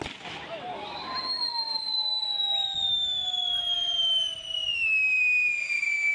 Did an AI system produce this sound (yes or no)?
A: no